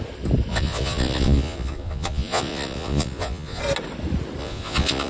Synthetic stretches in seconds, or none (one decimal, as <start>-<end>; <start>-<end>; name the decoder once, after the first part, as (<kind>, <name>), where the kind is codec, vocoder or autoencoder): 0.5-3.6 (vocoder, Vocos); 4.4-5.1